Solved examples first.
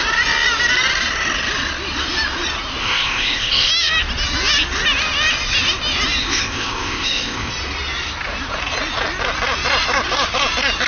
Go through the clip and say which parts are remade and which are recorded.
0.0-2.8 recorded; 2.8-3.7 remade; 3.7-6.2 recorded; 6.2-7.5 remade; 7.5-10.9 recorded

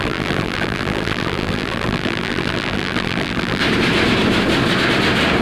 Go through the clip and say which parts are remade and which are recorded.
0.0-3.6 remade; 3.6-5.4 recorded

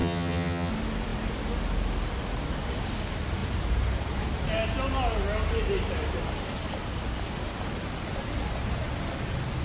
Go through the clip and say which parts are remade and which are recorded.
0.0-0.7 remade; 0.7-9.6 recorded

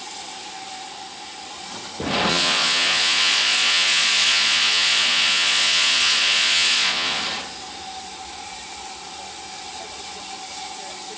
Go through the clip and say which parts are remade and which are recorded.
0.0-2.3 recorded; 2.3-7.2 remade; 7.2-11.2 recorded